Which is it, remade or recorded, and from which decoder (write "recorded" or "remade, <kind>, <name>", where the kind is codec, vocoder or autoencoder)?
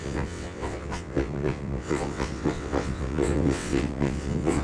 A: remade, vocoder, WaveNeXt